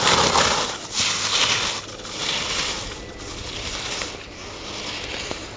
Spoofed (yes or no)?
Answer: no